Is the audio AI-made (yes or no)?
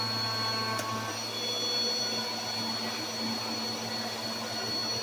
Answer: no